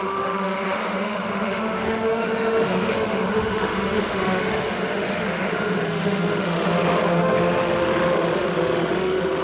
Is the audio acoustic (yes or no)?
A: no